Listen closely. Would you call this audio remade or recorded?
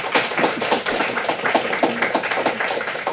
recorded